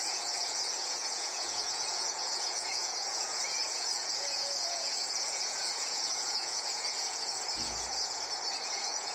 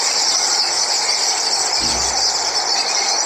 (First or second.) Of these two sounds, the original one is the second